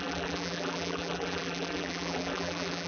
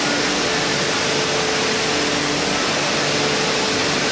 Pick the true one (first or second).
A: second